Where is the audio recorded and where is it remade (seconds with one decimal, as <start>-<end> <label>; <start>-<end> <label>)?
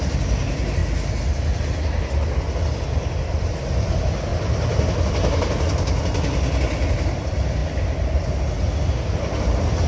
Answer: 0.0-9.9 recorded